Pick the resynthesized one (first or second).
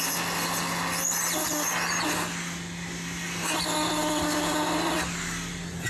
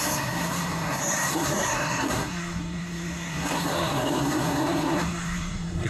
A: second